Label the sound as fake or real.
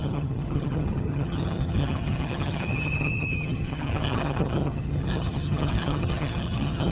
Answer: fake